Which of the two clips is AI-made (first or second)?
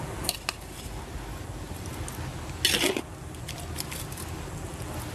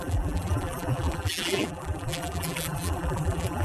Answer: second